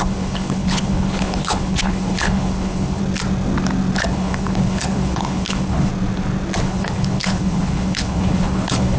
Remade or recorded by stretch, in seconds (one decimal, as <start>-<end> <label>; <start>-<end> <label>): 0.0-3.0 remade; 3.0-4.1 recorded; 4.1-5.9 remade; 5.9-6.6 recorded; 6.6-9.0 remade